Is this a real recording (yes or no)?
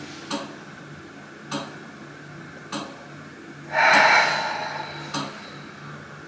yes